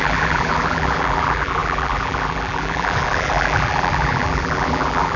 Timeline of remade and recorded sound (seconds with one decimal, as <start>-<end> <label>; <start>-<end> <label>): 0.0-5.2 remade